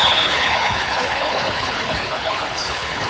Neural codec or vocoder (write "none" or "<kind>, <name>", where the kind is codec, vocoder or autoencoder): codec, HILCodec